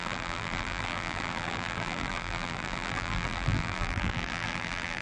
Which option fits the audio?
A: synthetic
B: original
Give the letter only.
A